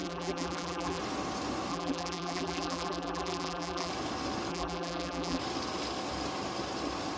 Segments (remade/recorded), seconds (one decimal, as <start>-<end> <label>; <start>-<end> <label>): 0.0-1.0 remade; 1.0-1.7 recorded; 1.7-3.9 remade; 3.9-4.5 recorded; 4.5-5.4 remade; 5.4-7.2 recorded